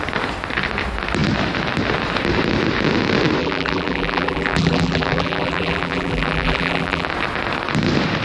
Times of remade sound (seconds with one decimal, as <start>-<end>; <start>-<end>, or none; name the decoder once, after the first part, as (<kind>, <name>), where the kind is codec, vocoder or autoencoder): 3.4-7.1 (vocoder, BigVGAN v2)